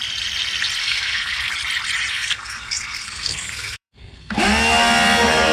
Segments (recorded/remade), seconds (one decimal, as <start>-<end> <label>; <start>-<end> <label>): 0.0-0.8 recorded; 0.8-1.5 remade; 1.5-2.1 recorded; 2.1-4.4 remade; 4.4-5.5 recorded